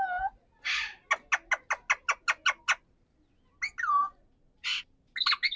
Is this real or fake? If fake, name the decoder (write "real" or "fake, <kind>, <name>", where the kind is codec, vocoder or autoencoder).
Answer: real